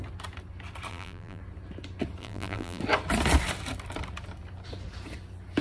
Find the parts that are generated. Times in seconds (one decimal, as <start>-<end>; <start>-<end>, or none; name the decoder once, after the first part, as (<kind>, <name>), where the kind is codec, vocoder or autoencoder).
0.9-1.4 (vocoder, BigVGAN v2); 2.2-2.8